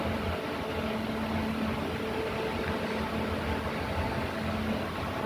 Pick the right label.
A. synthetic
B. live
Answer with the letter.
B